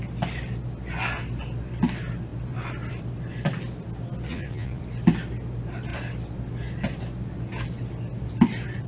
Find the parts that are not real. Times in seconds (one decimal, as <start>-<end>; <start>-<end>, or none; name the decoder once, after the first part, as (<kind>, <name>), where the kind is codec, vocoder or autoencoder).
4.3-4.8 (vocoder, Vocos)